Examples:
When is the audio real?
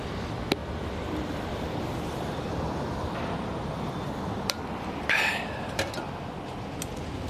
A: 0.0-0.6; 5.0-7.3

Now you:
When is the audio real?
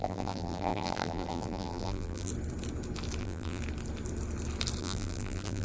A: 2.3-3.2; 3.6-4.8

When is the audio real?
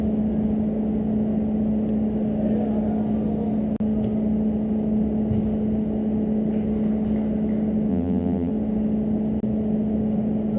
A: 0.0-7.9; 8.5-10.6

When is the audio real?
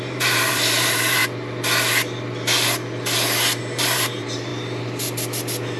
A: 1.2-3.6; 4.5-5.8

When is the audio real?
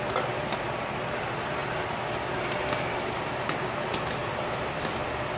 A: 0.0-4.2; 4.7-5.4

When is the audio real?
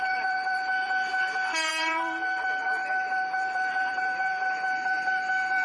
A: 1.1-1.7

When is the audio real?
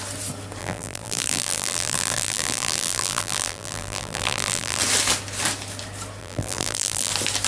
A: 0.0-0.6; 4.8-6.2; 7.1-7.5